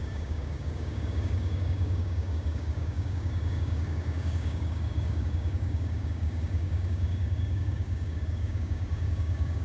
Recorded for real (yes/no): no